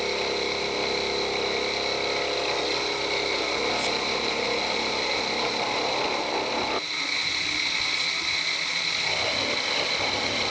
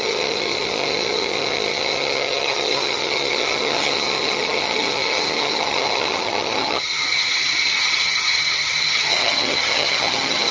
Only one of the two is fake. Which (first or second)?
second